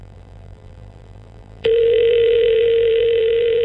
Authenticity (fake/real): fake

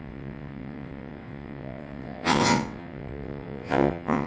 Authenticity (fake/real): fake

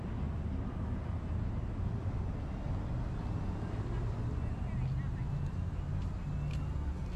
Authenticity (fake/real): real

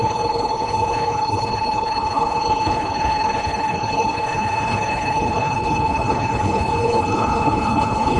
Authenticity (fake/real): fake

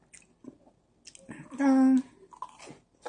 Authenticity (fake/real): real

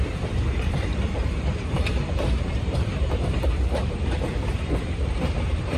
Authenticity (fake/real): fake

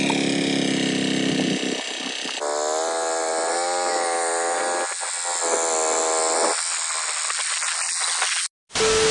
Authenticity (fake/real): real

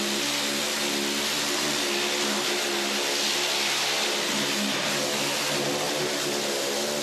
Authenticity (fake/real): real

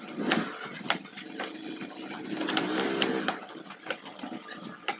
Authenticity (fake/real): real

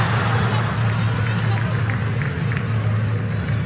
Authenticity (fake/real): real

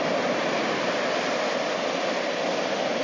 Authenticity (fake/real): real